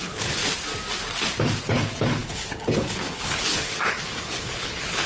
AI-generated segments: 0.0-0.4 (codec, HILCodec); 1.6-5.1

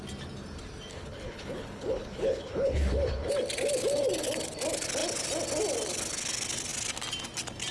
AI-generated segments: 0.9-3.3 (codec, HILCodec)

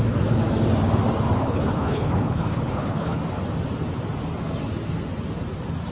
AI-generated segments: 1.4-3.2 (codec, HILCodec)

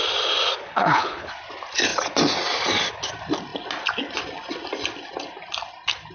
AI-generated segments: 0.6-1.3 (codec, HILCodec)